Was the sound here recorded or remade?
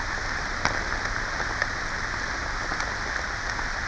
recorded